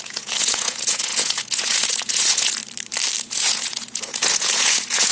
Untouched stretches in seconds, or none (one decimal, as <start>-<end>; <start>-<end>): 2.6-3.2